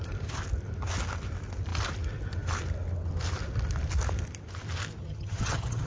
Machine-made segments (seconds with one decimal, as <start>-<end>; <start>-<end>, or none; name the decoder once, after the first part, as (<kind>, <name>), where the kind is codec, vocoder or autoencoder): 5.0-5.9 (vocoder, HiFi-GAN)